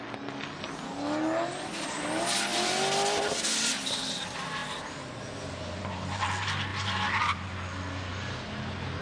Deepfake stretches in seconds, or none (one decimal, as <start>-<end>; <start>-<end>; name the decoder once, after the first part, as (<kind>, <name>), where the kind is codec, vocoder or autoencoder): none